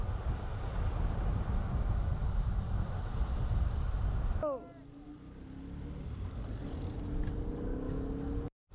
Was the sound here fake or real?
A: real